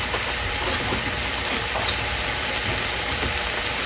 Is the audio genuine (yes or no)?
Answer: yes